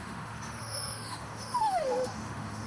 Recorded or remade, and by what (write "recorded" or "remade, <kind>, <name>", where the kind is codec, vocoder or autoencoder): remade, autoencoder, DAC-VAE